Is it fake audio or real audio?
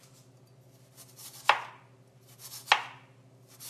real